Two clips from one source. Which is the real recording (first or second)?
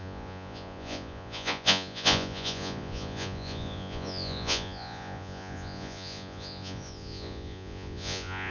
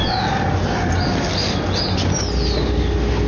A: second